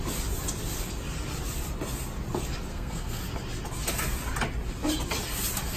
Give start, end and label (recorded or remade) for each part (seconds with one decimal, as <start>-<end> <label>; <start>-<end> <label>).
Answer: 0.0-2.7 recorded; 2.7-3.2 remade; 3.2-5.8 recorded

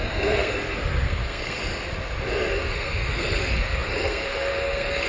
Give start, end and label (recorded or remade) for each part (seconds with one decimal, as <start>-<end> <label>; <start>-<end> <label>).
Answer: 0.0-1.6 remade; 1.6-2.5 recorded; 2.5-5.1 remade

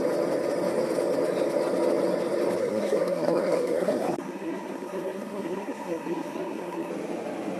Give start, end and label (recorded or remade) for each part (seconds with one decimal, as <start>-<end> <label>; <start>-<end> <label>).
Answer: 0.0-2.6 recorded; 2.6-6.9 remade; 6.9-7.6 recorded

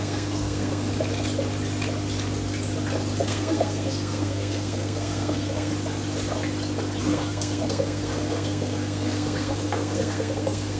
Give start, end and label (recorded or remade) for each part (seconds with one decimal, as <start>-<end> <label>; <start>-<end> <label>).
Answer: 0.0-0.9 remade; 0.9-3.2 recorded; 3.2-5.7 remade; 5.7-7.0 recorded; 7.0-10.8 remade

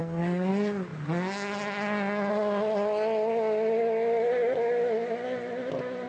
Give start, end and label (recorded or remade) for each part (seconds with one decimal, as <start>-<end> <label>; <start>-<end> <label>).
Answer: 0.0-0.5 remade; 0.5-6.1 recorded

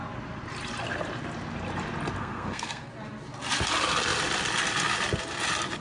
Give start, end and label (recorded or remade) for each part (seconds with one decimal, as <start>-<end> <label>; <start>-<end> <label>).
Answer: 0.0-2.2 recorded; 2.2-2.9 remade; 2.9-5.8 recorded

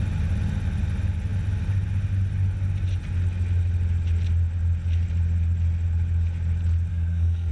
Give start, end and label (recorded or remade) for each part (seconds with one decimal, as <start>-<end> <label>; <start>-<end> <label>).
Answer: 0.0-6.9 recorded; 6.9-7.5 remade

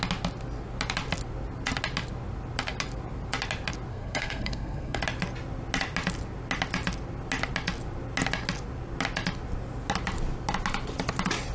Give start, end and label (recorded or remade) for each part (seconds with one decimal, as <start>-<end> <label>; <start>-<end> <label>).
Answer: 0.0-3.9 recorded; 3.9-5.0 remade; 5.0-11.5 recorded